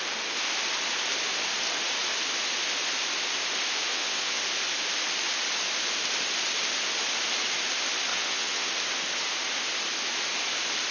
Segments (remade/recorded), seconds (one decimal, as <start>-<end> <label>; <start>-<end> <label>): 0.0-3.9 recorded; 3.9-4.4 remade; 4.4-8.1 recorded; 8.1-8.7 remade; 8.7-10.9 recorded